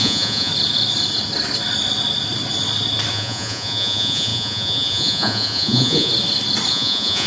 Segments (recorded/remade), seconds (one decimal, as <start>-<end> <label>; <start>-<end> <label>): 0.0-0.5 remade; 0.5-3.1 recorded; 3.1-6.1 remade; 6.1-6.7 recorded; 6.7-7.3 remade